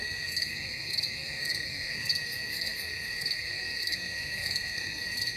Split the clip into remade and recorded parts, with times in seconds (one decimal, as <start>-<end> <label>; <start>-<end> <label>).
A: 0.0-5.4 remade